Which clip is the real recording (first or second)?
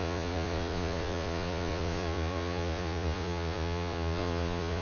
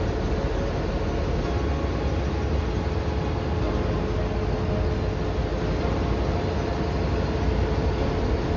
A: second